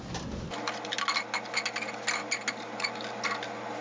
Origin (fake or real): real